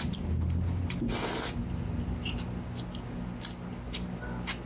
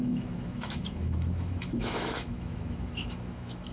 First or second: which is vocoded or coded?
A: second